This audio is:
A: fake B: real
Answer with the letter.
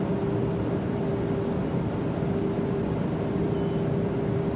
B